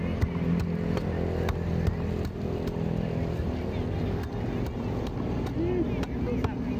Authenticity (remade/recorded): recorded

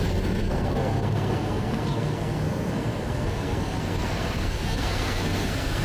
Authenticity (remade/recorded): remade